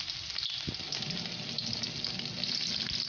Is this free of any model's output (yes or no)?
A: yes